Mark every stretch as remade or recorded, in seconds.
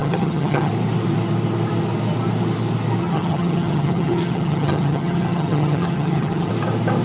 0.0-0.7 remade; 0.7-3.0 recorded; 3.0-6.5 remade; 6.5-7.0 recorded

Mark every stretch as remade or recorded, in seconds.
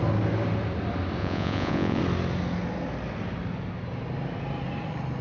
0.0-1.2 recorded; 1.2-2.0 remade; 2.0-5.2 recorded